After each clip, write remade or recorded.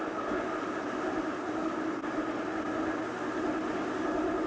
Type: recorded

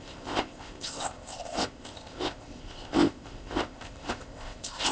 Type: remade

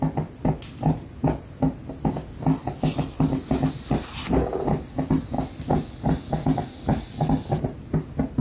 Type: recorded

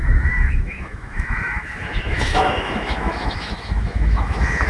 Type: remade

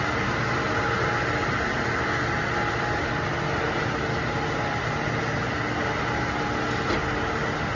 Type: recorded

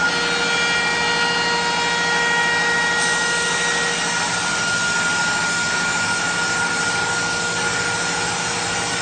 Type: recorded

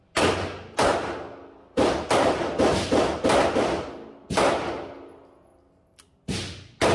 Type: recorded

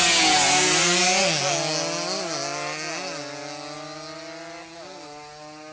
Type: recorded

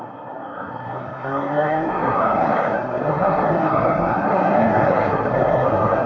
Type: remade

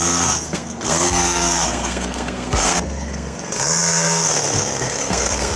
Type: remade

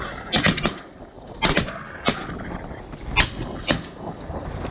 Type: recorded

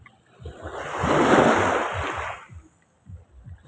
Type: recorded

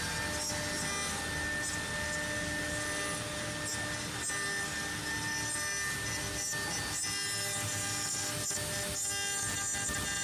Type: recorded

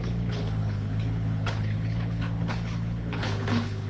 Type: remade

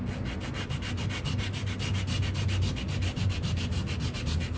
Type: recorded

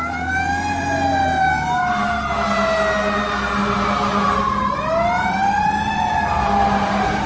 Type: recorded